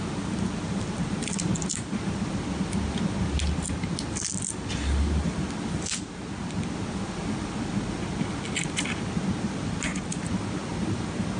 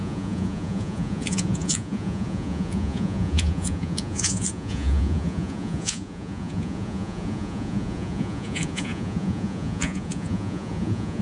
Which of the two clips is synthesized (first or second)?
second